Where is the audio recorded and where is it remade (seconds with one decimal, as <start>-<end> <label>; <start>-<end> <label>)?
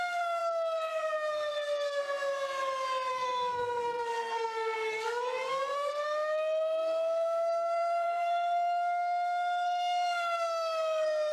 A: 0.0-2.0 remade; 2.0-3.1 recorded; 3.1-11.3 remade